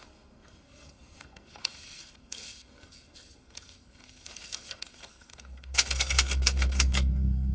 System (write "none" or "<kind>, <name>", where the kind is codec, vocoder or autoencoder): codec, SNAC